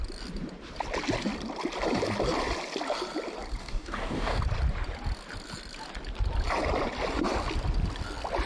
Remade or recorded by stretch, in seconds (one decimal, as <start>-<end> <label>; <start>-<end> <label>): 0.0-3.6 recorded; 3.6-4.4 remade; 4.4-8.5 recorded